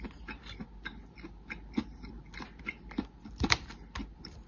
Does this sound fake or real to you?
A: real